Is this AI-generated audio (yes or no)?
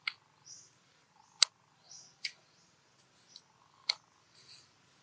no